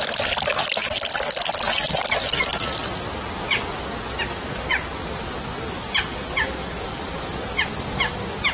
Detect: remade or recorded recorded